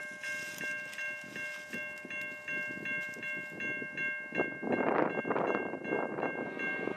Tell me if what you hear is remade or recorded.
recorded